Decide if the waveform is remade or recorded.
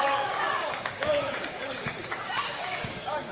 remade